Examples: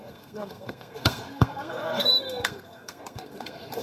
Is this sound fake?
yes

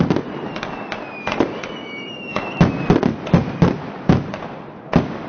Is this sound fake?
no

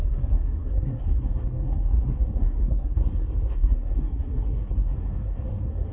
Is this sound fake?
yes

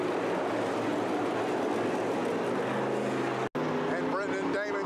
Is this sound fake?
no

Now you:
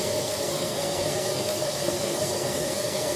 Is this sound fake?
yes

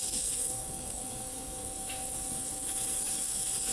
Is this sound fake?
yes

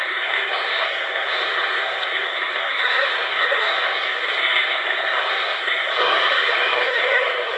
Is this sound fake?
yes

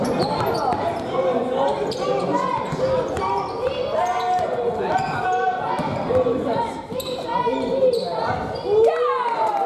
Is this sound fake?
no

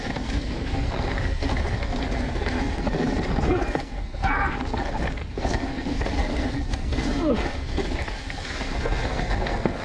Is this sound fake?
yes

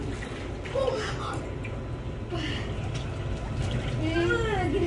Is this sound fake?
no